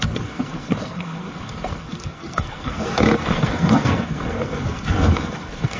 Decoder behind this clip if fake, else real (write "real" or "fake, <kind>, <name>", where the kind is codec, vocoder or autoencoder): fake, codec, SNAC